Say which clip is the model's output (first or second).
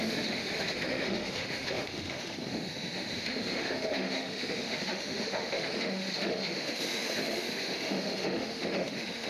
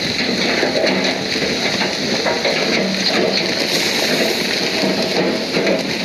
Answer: first